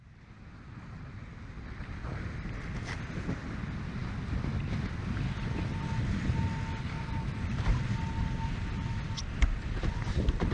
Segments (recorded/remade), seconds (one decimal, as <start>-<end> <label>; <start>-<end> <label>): 0.0-10.5 recorded